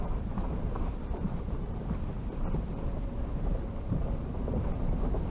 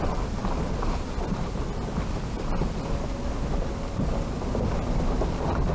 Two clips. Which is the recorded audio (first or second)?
second